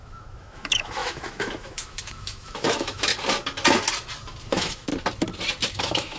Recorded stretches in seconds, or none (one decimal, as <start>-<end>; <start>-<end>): 3.1-4.5; 4.9-5.7